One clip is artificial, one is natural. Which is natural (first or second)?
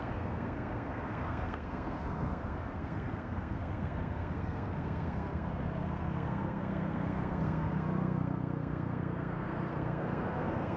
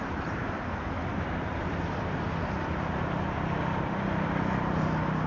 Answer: second